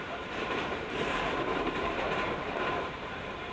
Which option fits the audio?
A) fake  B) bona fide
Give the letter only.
A